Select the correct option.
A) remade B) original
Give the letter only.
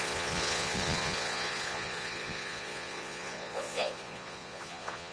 A